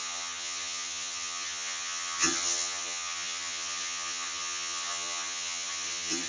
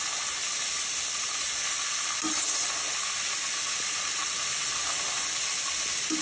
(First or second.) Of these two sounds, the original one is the second